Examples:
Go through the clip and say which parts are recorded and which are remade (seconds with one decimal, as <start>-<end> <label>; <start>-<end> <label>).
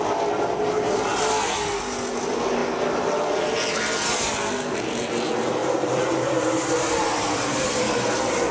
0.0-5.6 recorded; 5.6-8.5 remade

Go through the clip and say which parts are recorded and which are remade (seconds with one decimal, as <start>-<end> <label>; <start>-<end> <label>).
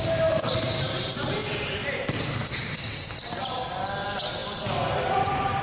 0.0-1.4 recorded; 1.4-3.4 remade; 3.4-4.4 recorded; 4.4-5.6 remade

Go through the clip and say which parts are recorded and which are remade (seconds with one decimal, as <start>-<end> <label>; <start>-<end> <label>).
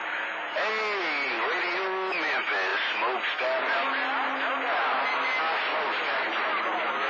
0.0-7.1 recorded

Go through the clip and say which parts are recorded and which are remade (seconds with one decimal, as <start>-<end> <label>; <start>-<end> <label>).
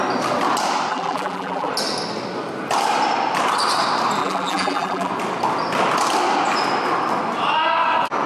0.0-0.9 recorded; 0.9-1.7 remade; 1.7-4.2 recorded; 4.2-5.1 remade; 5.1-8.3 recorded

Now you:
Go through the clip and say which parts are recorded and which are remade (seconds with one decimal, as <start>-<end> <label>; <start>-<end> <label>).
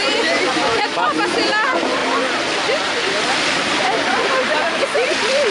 0.0-0.5 recorded; 0.5-1.2 remade; 1.2-2.0 recorded; 2.0-5.5 remade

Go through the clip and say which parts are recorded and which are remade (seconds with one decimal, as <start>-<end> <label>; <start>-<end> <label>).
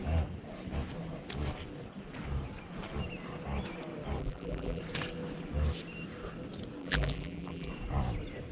0.0-4.2 recorded; 4.2-4.8 remade; 4.8-6.8 recorded; 6.8-7.7 remade; 7.7-8.5 recorded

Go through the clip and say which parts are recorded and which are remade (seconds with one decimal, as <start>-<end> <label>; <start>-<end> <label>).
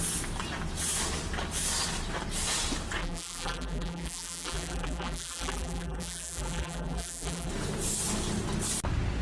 0.0-3.0 recorded; 3.0-7.5 remade; 7.5-9.2 recorded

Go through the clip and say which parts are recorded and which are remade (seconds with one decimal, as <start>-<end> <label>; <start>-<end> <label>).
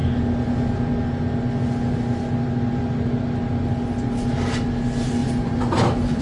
0.0-5.2 recorded; 5.2-6.2 remade